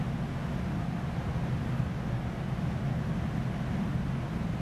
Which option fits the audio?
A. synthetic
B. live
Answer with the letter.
B